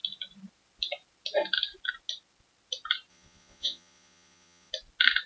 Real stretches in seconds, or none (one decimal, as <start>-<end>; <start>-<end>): 0.0-3.1; 4.7-5.3